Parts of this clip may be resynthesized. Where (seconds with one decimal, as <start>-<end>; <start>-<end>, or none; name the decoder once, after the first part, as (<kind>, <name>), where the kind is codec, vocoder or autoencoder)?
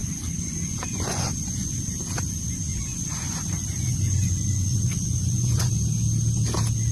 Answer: 0.0-1.8 (vocoder, Vocos); 2.7-5.7